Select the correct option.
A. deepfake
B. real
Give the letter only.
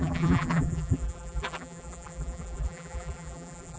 A